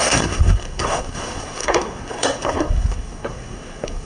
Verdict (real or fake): fake